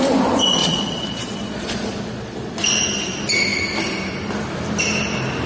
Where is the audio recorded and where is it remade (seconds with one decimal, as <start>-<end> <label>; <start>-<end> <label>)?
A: 0.0-0.6 recorded; 0.6-2.6 remade; 2.6-5.5 recorded